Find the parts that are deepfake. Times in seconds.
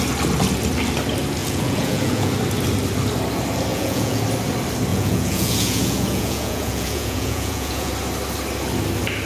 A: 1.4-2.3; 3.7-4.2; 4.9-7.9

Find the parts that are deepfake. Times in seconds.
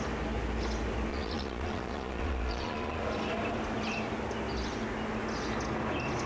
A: 1.1-3.0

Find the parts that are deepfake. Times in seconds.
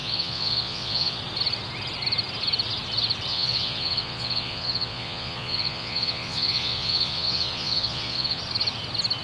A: 0.0-1.2; 3.3-8.4